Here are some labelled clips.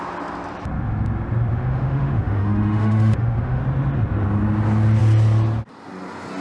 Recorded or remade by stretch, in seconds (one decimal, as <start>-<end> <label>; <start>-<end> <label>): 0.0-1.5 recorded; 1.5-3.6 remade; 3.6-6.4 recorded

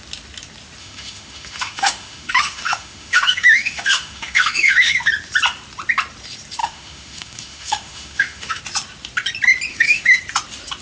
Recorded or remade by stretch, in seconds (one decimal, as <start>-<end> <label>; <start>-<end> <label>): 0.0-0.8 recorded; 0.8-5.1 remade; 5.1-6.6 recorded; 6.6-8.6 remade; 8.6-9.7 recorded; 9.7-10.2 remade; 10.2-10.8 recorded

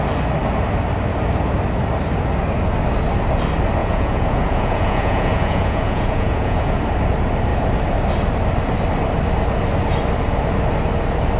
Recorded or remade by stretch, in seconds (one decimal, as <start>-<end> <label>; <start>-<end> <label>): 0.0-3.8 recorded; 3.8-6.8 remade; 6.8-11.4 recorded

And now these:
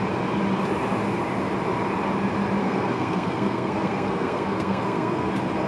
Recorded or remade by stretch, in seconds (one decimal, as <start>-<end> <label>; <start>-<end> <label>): 0.0-2.6 recorded; 2.6-5.3 remade; 5.3-5.7 recorded

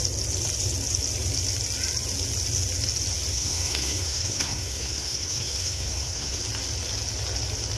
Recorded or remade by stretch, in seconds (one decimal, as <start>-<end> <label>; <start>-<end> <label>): 0.0-3.3 recorded; 3.3-6.4 remade; 6.4-7.8 recorded

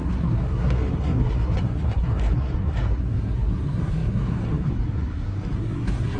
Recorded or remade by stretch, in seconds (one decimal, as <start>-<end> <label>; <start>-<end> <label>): 0.0-6.2 remade